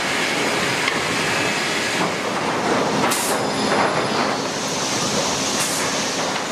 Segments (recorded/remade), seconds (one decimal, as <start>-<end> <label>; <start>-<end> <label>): 0.0-6.5 recorded